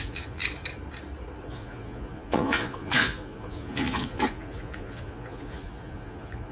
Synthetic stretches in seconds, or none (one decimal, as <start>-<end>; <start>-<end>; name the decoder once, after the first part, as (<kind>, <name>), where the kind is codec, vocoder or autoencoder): 0.0-0.4 (vocoder, Vocos); 1.4-6.5